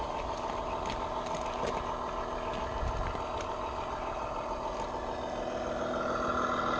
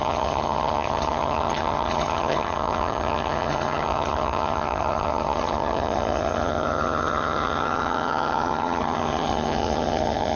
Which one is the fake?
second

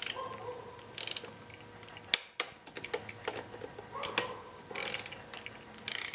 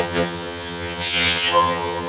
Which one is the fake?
second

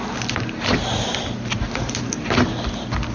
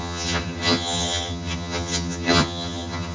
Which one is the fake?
second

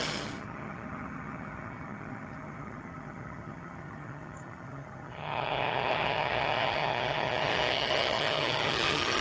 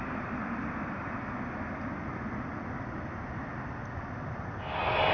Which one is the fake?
first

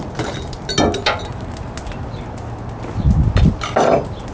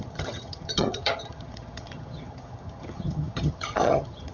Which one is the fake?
second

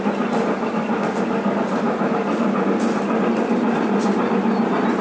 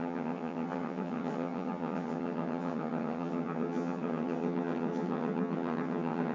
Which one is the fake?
second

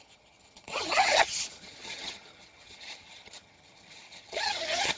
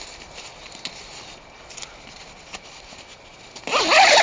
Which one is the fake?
first